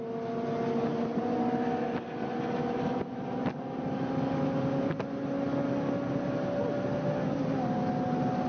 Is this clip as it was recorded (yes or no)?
yes